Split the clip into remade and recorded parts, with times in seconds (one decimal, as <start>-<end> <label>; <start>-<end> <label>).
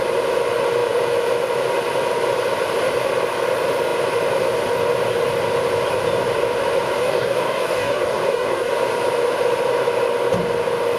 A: 0.0-7.0 recorded; 7.0-8.7 remade; 8.7-11.0 recorded